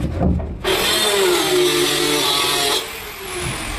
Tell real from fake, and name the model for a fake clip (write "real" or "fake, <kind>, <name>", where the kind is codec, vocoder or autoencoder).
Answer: real